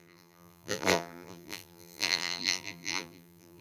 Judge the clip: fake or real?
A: fake